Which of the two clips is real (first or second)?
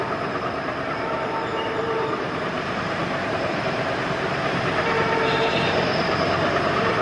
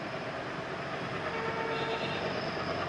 second